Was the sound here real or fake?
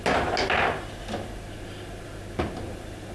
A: real